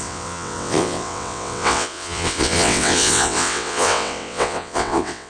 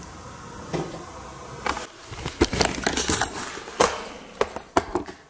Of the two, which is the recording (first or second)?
second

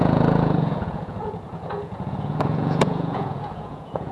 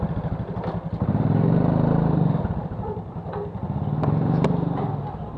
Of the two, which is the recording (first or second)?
second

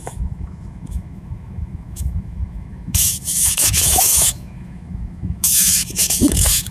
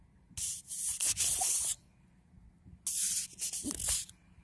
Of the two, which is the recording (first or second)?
second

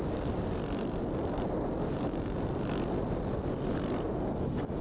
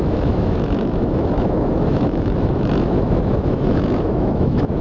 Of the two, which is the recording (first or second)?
first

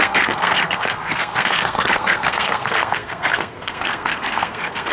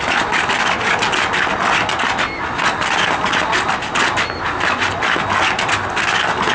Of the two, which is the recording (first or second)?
second